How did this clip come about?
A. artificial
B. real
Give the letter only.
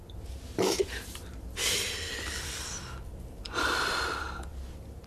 A